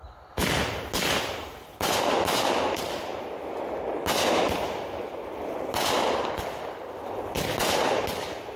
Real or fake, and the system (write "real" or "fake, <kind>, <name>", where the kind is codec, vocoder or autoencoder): real